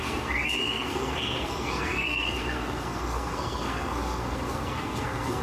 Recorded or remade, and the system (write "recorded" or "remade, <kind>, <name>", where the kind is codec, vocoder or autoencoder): remade, codec, SNAC